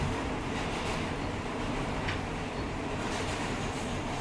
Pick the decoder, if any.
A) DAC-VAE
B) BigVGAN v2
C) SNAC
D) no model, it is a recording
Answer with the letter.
B